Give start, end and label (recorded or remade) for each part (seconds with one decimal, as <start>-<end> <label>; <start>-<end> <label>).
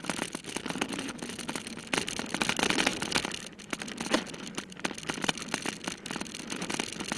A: 0.0-7.2 recorded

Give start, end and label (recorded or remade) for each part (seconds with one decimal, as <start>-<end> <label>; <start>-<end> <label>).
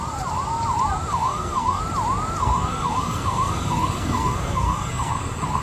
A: 0.0-1.1 recorded; 1.1-1.8 remade; 1.8-2.4 recorded; 2.4-5.6 remade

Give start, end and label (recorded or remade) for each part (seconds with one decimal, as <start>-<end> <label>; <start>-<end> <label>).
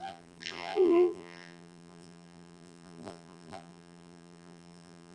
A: 0.0-5.1 remade